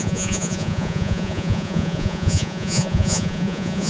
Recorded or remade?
remade